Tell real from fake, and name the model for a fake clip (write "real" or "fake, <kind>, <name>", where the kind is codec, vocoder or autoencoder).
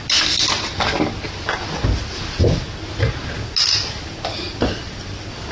real